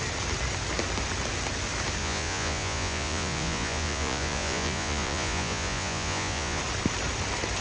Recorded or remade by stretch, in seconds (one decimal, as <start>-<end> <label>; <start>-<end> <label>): 0.0-2.0 recorded; 2.0-6.6 remade; 6.6-7.6 recorded